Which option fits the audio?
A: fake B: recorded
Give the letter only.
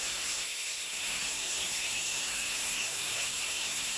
A